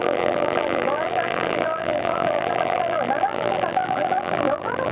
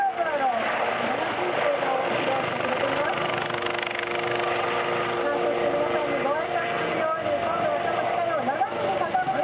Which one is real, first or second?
second